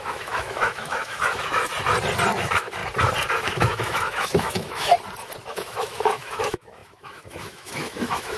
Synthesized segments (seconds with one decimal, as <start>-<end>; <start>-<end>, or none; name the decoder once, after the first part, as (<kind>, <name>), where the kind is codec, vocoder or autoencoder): 0.0-1.7 (autoencoder, DAC-VAE); 2.4-2.8; 3.3-4.9; 5.5-8.4